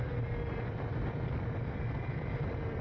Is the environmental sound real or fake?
fake